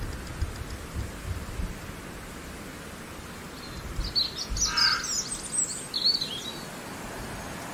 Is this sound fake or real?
real